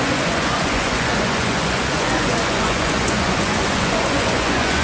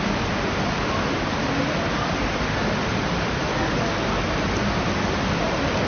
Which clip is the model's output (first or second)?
first